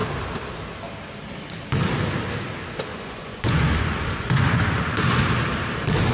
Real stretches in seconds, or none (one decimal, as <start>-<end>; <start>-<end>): 0.0-2.9; 5.2-6.1